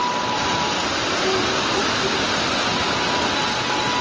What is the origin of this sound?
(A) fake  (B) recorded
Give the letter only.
B